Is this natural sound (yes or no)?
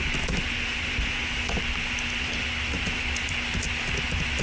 yes